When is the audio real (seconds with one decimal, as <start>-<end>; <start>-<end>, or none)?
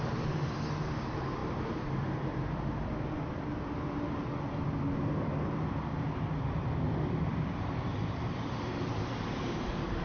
0.0-7.3